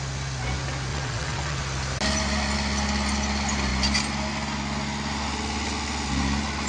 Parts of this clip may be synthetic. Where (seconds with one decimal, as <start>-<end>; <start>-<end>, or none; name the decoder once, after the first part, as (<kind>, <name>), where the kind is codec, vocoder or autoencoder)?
0.9-1.6 (vocoder, WaveNeXt)